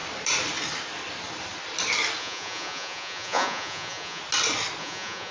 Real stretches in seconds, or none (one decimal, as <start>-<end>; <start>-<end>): 0.0-2.2; 4.2-4.8